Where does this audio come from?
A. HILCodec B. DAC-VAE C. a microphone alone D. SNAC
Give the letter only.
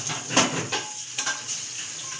C